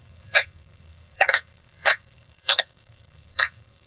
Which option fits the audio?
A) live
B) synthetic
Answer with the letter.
B